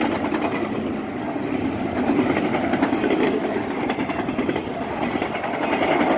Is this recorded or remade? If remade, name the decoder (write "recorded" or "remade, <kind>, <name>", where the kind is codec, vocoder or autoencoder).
recorded